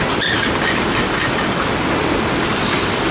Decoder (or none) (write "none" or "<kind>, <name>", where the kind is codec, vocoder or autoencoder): none